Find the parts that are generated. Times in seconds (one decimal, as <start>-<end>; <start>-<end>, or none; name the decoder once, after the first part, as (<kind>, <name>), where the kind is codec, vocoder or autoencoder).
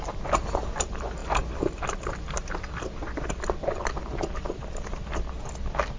none